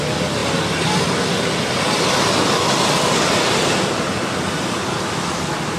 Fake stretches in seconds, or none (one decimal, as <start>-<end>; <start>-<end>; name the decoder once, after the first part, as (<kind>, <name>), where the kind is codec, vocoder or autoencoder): none